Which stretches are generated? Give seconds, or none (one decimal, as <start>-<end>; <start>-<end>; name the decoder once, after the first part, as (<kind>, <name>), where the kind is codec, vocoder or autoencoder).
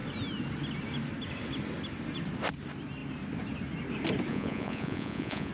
4.3-5.5 (vocoder, Vocos)